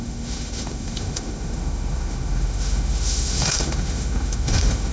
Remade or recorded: remade